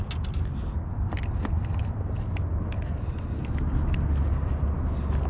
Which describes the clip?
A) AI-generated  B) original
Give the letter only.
B